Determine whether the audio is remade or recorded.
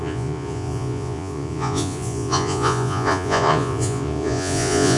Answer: remade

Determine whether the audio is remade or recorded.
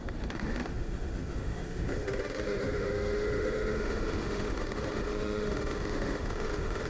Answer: remade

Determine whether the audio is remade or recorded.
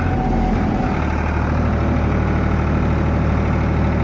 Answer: recorded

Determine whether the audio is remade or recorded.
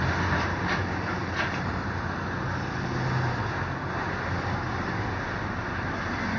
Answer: recorded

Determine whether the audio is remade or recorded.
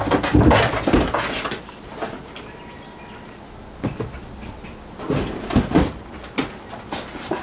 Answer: recorded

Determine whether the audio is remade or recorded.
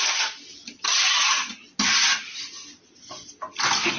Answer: recorded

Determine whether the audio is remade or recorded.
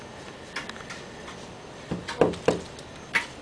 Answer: recorded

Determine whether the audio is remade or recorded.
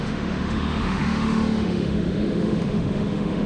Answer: remade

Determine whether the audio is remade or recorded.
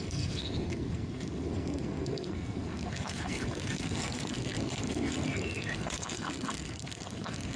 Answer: remade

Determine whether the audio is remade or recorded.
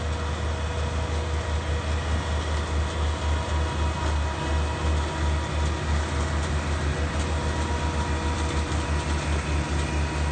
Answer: recorded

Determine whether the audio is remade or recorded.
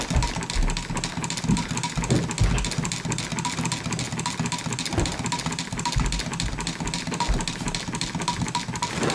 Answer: recorded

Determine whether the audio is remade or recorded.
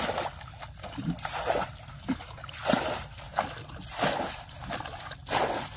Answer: recorded